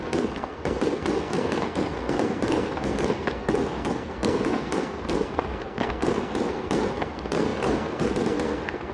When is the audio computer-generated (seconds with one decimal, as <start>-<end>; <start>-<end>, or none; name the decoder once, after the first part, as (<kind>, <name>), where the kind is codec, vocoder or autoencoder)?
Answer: 0.0-8.9 (codec, SNAC)